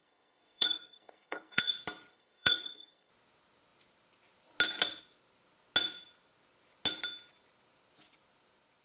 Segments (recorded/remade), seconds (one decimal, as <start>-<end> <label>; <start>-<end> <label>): 0.0-1.7 remade; 1.7-2.1 recorded; 2.1-3.1 remade; 3.1-8.8 recorded